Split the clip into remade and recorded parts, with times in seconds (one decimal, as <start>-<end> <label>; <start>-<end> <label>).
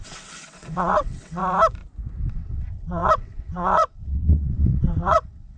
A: 0.0-1.4 remade; 1.4-2.3 recorded; 2.3-5.6 remade